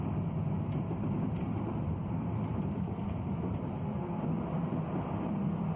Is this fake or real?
fake